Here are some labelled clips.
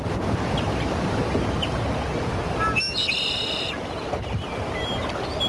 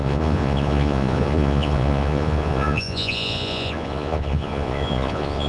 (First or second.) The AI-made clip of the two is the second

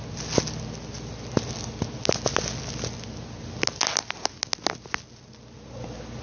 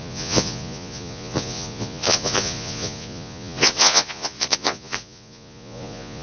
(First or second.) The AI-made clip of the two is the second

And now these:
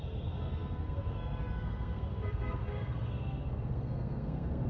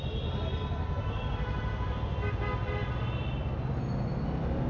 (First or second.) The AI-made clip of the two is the first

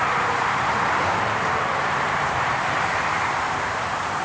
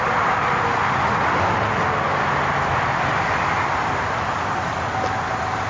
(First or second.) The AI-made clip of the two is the first